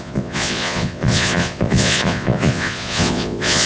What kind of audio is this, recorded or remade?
remade